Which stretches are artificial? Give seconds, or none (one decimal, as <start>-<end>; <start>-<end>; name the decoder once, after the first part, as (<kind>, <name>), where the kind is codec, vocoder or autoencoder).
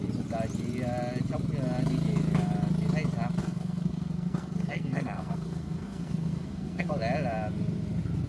3.4-6.9 (codec, SNAC)